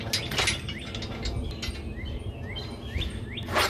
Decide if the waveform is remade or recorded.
recorded